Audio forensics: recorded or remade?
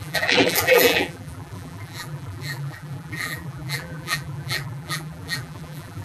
remade